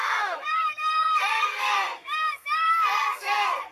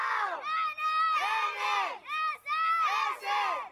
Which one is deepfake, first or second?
first